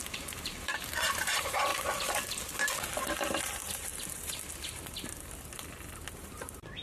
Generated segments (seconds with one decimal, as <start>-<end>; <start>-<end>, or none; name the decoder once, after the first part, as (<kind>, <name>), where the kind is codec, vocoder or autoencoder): 0.0-1.7 (vocoder, BigVGAN v2); 3.4-3.9; 6.2-6.8